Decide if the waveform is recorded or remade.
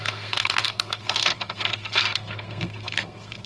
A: remade